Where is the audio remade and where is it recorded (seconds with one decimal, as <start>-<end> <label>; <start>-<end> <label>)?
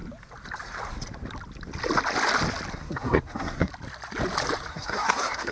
0.0-2.7 recorded; 2.7-3.7 remade; 3.7-4.7 recorded; 4.7-5.5 remade